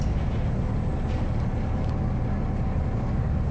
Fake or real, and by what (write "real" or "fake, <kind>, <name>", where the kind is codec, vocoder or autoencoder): real